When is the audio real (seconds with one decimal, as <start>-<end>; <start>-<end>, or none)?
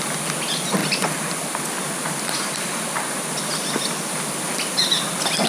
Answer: 0.0-5.5